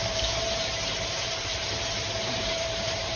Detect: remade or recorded remade